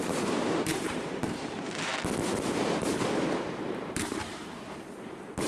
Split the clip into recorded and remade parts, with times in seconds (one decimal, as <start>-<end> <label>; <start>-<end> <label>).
0.0-1.9 remade; 1.9-2.7 recorded; 2.7-5.5 remade